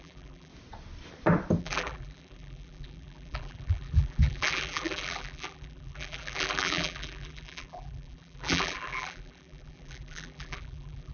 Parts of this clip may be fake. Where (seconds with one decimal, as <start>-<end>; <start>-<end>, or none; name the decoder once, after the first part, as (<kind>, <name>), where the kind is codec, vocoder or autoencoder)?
0.0-0.5 (vocoder, BigVGAN v2); 1.6-11.1